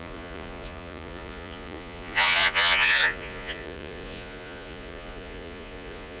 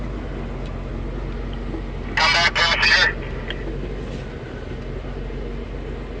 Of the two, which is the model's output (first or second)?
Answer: first